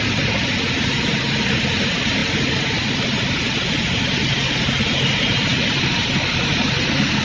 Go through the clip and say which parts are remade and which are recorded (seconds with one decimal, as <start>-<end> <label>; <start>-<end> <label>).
0.0-5.5 recorded; 5.5-7.2 remade

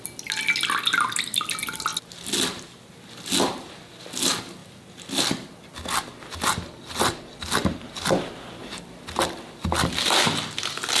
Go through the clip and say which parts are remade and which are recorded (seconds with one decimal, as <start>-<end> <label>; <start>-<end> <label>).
0.0-11.0 recorded

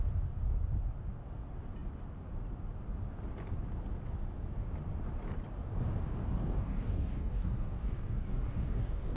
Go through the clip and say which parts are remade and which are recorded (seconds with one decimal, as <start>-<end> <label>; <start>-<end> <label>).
0.0-6.2 recorded; 6.2-9.2 remade

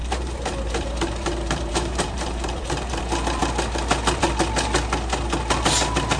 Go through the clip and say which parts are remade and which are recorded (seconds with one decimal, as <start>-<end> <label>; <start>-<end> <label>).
0.0-3.0 remade; 3.0-6.2 recorded

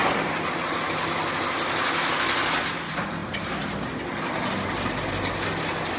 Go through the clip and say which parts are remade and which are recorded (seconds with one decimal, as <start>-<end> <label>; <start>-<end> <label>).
0.0-6.0 recorded

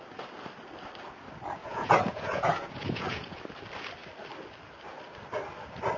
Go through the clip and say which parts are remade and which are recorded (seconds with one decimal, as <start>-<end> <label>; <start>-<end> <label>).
0.0-1.6 recorded; 1.6-3.4 remade; 3.4-6.0 recorded

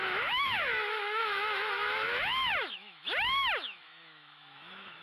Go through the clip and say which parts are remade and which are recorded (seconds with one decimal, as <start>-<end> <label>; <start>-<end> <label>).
0.0-5.0 remade